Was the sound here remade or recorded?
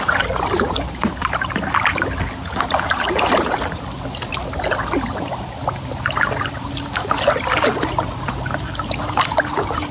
remade